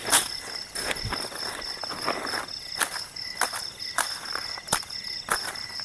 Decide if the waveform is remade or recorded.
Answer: recorded